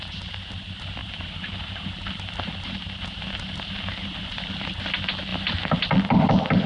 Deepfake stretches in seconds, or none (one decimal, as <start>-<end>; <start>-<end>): 1.0-4.5